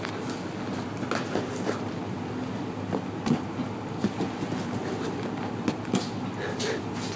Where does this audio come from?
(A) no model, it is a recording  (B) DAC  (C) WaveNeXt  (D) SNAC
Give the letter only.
A